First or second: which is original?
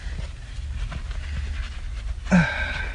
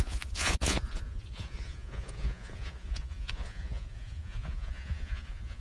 first